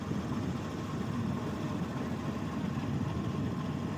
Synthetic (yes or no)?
no